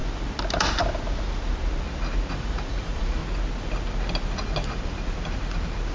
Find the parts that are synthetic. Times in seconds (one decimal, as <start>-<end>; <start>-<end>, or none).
2.3-3.2